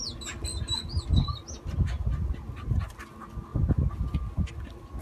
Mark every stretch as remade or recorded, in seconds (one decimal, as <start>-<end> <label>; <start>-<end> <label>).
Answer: 0.0-5.0 recorded